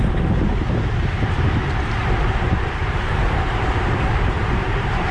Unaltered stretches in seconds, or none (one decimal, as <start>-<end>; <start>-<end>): 0.0-2.0